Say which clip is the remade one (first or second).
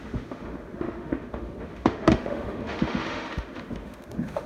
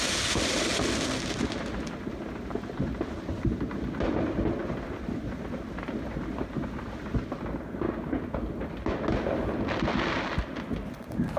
first